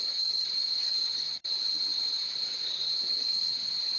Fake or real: fake